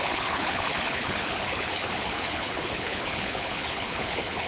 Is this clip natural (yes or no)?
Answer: no